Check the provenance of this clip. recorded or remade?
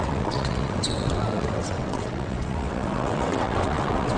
remade